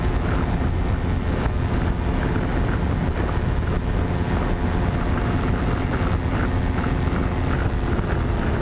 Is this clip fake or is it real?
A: real